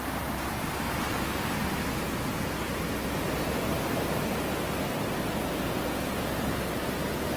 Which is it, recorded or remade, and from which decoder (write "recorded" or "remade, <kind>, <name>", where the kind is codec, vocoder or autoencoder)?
recorded